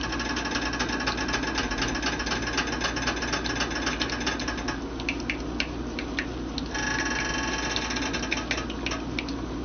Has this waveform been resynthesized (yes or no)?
no